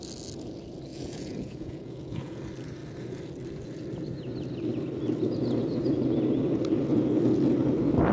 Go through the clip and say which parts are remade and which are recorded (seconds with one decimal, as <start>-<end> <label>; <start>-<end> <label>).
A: 0.0-0.9 recorded; 0.9-2.4 remade; 2.4-8.1 recorded